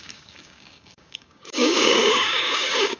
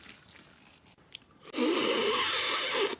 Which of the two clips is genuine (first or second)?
second